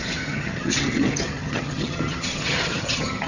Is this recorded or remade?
remade